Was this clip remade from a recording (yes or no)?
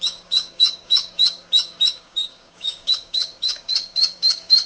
yes